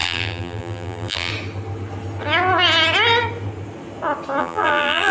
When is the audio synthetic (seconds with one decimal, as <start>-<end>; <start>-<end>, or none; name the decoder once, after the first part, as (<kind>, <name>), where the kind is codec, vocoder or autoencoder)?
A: 0.0-1.3 (vocoder, BigVGAN v2); 4.4-5.1